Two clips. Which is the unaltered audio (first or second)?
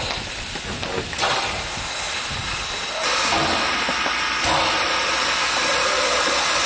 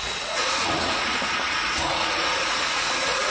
first